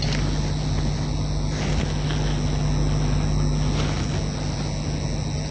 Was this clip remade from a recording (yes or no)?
no